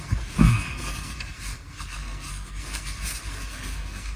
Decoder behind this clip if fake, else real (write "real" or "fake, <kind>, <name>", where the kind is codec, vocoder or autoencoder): fake, codec, SNAC